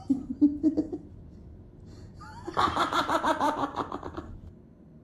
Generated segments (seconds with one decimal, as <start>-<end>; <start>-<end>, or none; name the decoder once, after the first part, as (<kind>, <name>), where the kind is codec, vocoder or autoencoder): 0.0-5.0 (vocoder, BigVGAN v2)